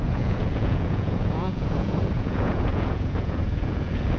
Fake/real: fake